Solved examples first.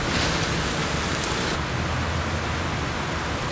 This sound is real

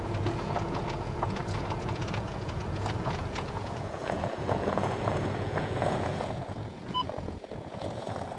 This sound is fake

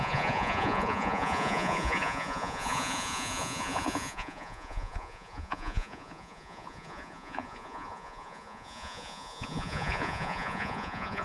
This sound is fake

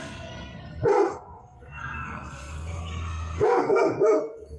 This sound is fake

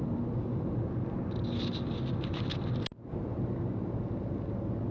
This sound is real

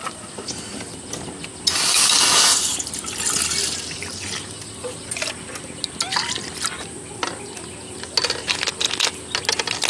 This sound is real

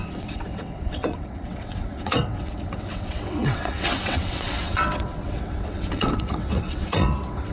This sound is fake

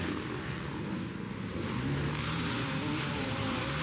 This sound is real